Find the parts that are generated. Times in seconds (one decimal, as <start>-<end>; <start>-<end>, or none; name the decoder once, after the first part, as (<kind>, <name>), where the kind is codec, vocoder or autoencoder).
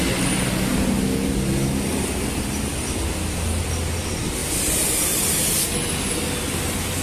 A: 2.7-3.6 (vocoder, BigVGAN v2)